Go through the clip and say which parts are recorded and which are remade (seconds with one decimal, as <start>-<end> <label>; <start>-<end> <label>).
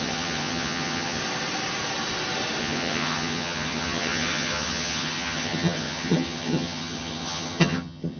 0.0-1.2 remade; 1.2-2.6 recorded; 2.6-8.2 remade